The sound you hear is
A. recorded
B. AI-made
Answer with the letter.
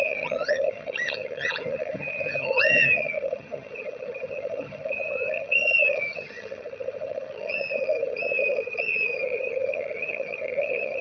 B